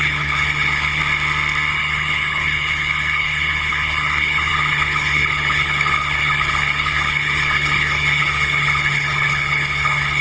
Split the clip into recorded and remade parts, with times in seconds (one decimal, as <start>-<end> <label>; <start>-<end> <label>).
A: 0.0-1.0 remade; 1.0-1.7 recorded; 1.7-10.2 remade